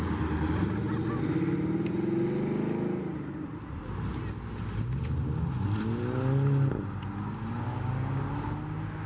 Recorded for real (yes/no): yes